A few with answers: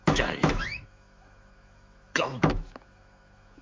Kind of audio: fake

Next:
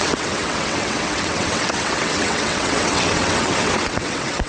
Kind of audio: fake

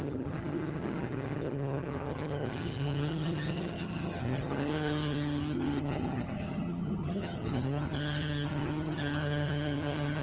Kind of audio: fake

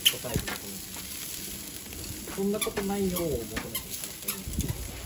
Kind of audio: real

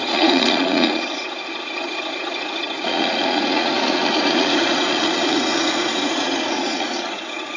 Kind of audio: fake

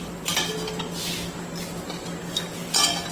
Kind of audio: real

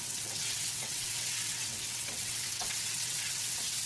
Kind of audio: fake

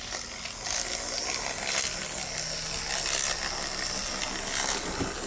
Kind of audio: real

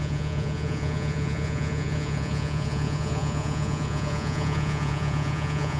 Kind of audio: fake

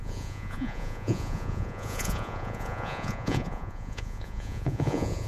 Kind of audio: fake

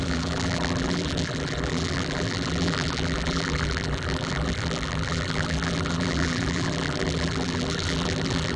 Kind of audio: fake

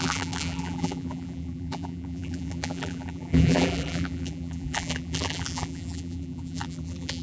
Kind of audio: fake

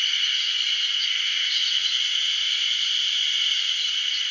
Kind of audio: real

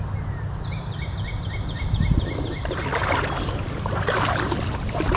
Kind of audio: real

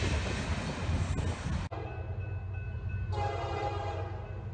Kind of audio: real